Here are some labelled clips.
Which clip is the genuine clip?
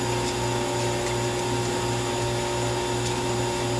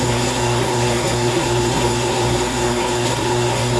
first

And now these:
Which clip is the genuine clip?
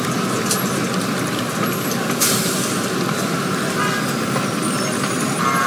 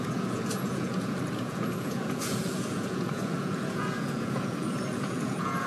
first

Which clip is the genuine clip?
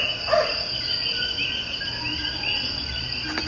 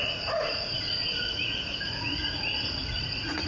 first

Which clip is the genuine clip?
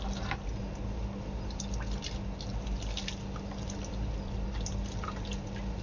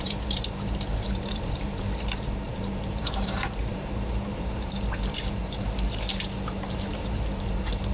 first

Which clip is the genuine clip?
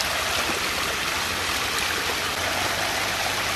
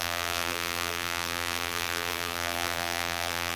first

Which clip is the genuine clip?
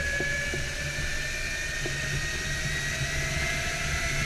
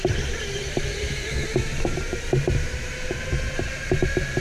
first